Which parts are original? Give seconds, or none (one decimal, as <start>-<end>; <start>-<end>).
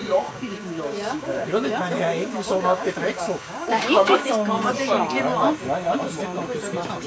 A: 4.3-7.1